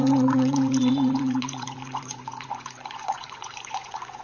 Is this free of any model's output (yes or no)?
no